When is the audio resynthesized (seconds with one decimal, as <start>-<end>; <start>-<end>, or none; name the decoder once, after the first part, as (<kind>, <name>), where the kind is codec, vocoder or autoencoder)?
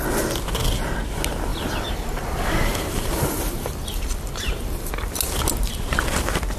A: 1.5-4.9 (vocoder, BigVGAN v2)